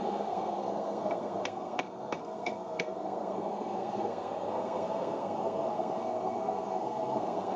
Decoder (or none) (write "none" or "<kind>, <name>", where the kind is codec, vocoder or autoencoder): codec, SNAC